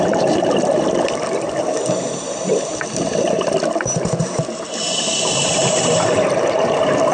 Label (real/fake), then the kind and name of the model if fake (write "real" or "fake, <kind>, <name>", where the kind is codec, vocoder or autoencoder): real